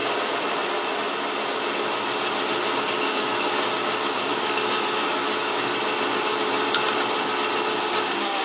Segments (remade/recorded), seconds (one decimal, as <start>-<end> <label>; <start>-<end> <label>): 0.0-2.8 recorded; 2.8-5.7 remade; 5.7-7.7 recorded; 7.7-8.4 remade